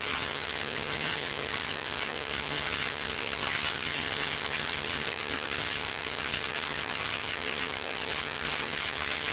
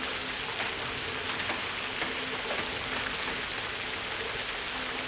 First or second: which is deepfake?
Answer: first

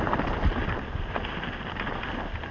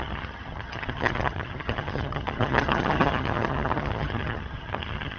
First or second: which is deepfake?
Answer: second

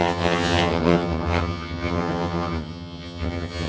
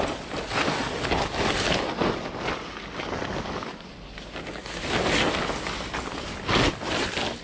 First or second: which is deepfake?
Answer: first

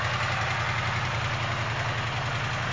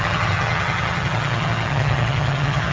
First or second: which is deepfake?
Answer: second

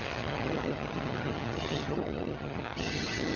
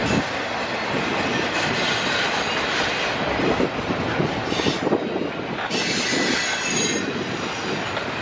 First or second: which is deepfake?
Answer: first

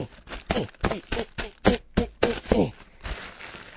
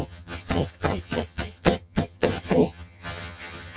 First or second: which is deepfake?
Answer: second